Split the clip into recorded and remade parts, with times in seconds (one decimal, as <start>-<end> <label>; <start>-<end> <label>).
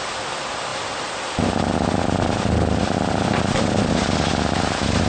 0.0-5.1 recorded